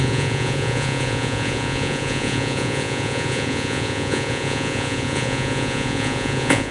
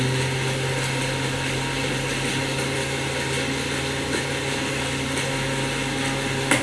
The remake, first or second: first